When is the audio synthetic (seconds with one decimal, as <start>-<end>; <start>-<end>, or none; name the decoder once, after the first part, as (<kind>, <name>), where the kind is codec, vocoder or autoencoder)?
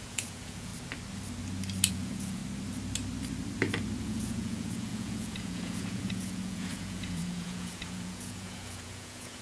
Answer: 0.0-0.7 (vocoder, Vocos); 1.9-2.4; 4.0-9.4